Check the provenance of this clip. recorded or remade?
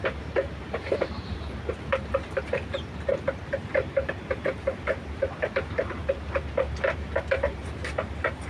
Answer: remade